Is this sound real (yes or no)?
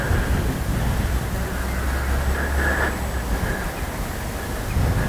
yes